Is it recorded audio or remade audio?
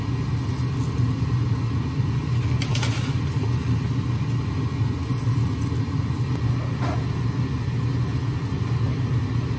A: recorded